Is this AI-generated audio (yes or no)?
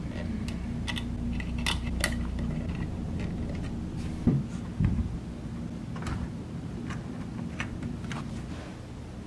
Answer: no